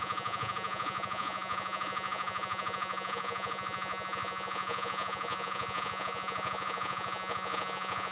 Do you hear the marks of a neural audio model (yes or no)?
yes